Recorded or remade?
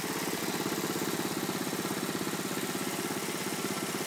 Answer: recorded